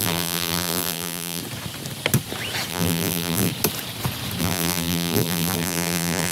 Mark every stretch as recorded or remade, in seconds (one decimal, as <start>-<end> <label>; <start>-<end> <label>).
0.0-1.4 remade; 1.4-2.7 recorded; 2.7-3.5 remade; 3.5-4.4 recorded; 4.4-6.3 remade